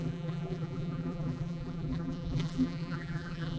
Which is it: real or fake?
fake